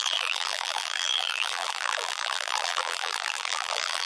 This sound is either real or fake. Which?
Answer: fake